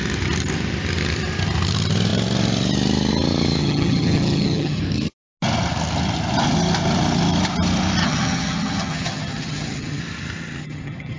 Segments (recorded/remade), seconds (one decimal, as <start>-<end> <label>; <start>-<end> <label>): 0.0-3.6 recorded; 3.6-4.8 remade; 4.8-8.0 recorded; 8.0-10.0 remade; 10.0-10.6 recorded; 10.6-11.2 remade